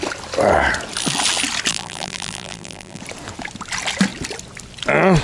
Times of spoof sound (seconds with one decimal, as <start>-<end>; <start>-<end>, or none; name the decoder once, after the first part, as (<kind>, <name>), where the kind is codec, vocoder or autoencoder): 1.7-3.0 (vocoder, BigVGAN v2)